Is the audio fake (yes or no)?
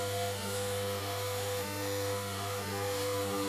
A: yes